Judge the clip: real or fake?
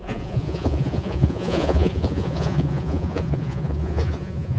fake